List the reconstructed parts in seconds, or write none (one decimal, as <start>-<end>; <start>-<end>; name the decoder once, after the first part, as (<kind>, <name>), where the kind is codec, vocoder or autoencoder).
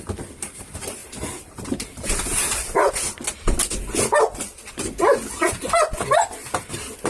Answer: 1.0-2.9 (vocoder, BigVGAN v2)